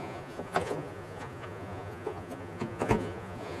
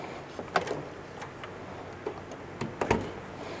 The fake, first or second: first